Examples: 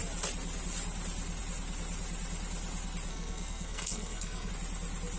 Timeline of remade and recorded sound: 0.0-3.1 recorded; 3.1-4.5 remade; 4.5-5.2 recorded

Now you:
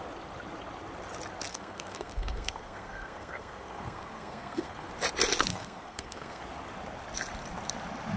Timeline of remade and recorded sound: 0.0-1.5 recorded; 1.5-4.9 remade; 4.9-5.5 recorded; 5.5-6.4 remade; 6.4-8.2 recorded

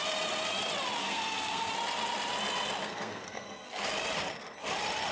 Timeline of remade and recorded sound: 0.0-1.0 recorded; 1.0-1.7 remade; 1.7-2.8 recorded; 2.8-3.9 remade; 3.9-5.1 recorded